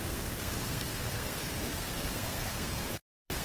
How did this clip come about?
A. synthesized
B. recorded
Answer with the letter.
A